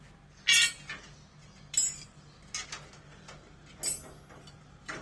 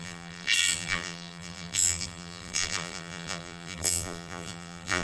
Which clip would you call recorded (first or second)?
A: first